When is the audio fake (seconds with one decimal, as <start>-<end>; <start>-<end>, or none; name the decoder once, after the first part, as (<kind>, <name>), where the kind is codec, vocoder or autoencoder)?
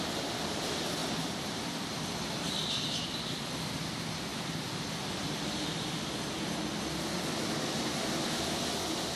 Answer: none